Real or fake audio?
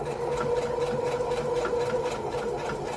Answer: real